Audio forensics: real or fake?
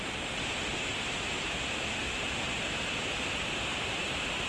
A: real